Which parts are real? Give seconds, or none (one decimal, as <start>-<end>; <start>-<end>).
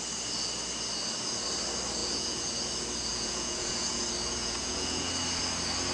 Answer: 0.0-2.0; 2.5-3.1; 4.0-4.4; 5.1-5.9